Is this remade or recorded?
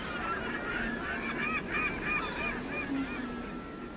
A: recorded